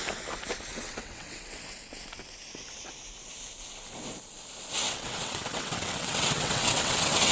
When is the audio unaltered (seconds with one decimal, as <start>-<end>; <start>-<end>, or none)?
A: 0.0-0.7; 1.6-4.8